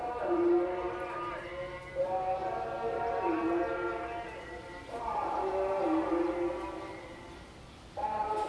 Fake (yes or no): no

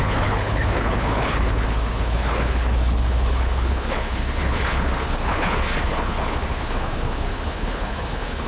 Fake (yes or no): yes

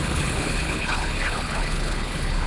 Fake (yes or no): yes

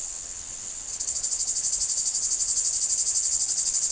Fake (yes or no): yes